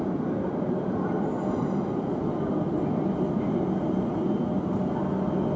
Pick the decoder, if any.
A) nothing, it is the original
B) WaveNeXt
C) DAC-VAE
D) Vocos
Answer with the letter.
A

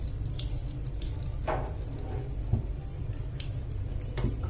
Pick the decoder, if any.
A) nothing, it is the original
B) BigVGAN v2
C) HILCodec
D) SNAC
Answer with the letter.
B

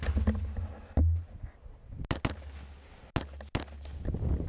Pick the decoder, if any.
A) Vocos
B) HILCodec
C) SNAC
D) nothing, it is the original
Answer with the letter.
D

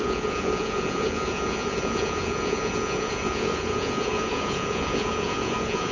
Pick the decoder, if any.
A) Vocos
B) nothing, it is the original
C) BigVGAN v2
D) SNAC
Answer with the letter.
A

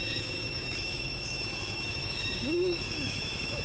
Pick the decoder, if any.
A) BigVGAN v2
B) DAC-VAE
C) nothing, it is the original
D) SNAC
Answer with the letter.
B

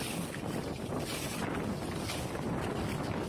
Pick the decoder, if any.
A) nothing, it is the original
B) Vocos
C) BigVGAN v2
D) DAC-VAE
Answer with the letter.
A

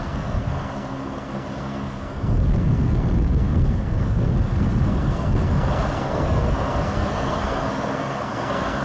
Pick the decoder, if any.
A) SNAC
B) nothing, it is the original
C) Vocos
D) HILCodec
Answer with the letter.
A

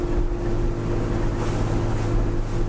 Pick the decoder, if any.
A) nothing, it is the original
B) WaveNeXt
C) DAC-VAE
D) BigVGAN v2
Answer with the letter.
A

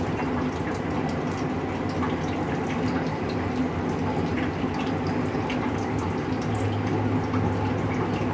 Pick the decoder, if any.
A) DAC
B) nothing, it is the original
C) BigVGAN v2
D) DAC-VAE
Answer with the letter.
B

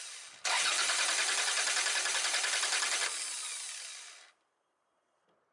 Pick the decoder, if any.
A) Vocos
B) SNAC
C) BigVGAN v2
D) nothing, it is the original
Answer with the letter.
D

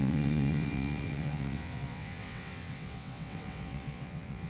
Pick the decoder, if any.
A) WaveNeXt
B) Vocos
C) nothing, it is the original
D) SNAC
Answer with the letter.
A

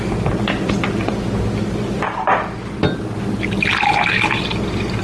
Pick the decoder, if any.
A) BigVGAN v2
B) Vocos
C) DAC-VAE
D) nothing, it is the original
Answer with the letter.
D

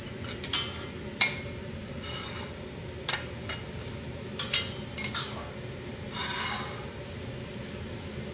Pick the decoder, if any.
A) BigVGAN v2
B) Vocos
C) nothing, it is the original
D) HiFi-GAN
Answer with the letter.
C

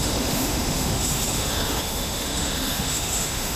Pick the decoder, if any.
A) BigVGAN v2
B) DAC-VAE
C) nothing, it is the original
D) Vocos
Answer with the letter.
B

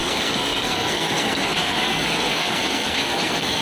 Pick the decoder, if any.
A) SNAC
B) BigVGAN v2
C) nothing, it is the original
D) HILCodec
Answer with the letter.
A